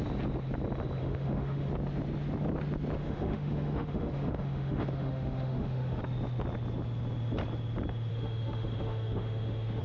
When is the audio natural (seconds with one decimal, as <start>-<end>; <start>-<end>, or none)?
0.0-1.0; 1.7-3.0; 6.0-8.1